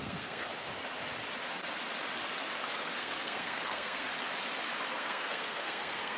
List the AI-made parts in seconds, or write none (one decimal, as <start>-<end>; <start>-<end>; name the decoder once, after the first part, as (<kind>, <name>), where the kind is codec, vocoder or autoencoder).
0.0-0.7 (codec, SNAC); 2.7-4.1; 4.9-6.2